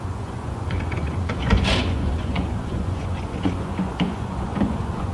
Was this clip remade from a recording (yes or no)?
yes